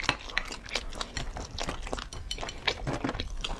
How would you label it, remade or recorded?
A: recorded